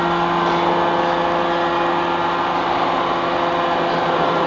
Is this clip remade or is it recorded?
recorded